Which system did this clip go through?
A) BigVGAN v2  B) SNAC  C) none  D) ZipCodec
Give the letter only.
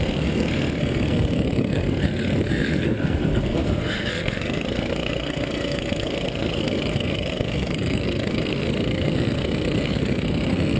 B